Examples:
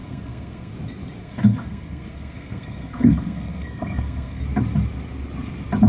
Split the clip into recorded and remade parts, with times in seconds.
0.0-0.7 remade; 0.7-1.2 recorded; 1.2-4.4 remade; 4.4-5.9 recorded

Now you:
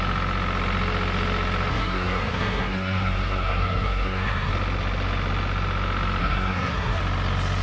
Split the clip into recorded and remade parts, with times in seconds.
0.0-1.7 recorded; 1.7-4.5 remade; 4.5-6.2 recorded; 6.2-7.0 remade; 7.0-7.6 recorded

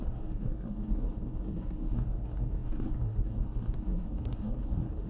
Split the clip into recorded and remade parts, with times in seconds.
0.0-5.1 remade